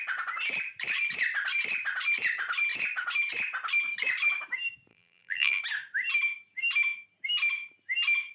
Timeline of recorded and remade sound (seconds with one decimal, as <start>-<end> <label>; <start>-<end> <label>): 0.0-4.9 recorded; 4.9-5.6 remade; 5.6-8.3 recorded